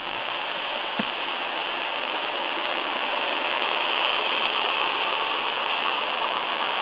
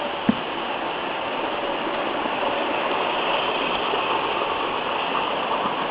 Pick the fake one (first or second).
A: first